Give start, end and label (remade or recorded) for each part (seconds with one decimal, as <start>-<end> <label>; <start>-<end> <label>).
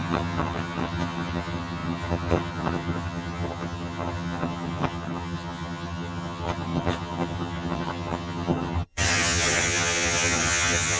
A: 0.0-11.0 remade